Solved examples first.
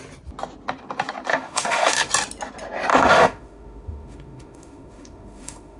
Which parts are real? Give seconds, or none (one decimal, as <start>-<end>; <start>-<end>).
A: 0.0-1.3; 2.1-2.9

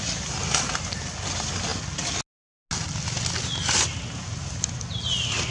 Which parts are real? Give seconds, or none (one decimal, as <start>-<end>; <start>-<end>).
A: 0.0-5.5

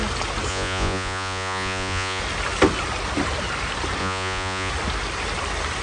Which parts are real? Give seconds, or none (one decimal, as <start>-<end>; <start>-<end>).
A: 0.0-0.5; 2.2-4.0; 4.7-5.8